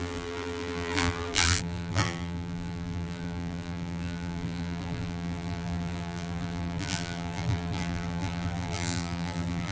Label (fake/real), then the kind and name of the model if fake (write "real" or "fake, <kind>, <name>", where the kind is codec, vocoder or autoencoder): fake, vocoder, BigVGAN v2